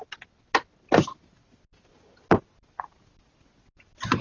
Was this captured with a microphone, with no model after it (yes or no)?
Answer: yes